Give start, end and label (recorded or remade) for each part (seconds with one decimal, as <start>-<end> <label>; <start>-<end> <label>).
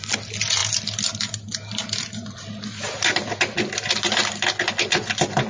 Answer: 0.0-5.5 recorded